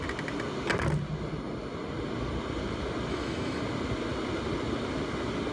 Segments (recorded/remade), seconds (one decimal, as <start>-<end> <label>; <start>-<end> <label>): 0.0-3.1 recorded; 3.1-3.6 remade; 3.6-5.5 recorded